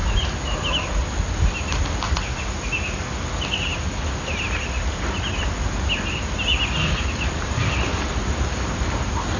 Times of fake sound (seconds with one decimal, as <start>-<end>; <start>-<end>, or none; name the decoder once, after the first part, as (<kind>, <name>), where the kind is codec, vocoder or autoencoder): none